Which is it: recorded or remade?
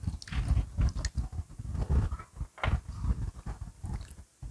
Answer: recorded